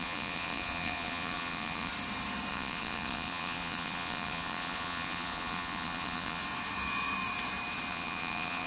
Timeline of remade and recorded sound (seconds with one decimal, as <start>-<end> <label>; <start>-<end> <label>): 0.0-1.9 remade; 1.9-2.5 recorded; 2.5-6.4 remade; 6.4-7.9 recorded; 7.9-8.7 remade